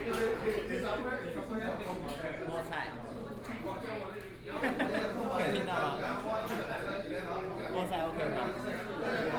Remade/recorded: recorded